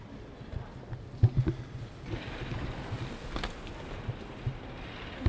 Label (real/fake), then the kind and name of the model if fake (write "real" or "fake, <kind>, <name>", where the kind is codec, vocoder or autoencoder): real